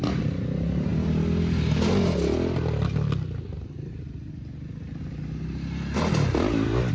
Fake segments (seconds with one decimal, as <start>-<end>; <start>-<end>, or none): none